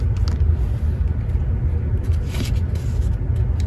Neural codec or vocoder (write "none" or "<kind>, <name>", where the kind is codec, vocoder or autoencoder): none